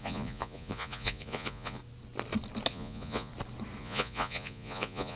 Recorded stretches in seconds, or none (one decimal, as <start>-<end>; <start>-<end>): 1.8-2.7; 3.3-3.8